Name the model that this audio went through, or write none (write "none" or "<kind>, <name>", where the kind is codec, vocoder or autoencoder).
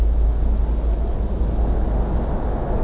none